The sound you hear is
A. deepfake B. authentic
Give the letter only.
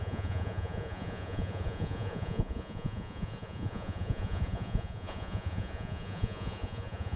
A